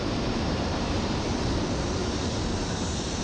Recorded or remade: remade